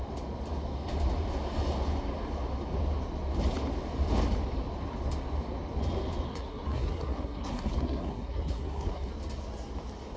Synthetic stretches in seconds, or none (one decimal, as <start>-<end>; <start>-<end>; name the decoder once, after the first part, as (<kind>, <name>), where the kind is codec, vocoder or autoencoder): 6.3-9.1 (codec, SNAC)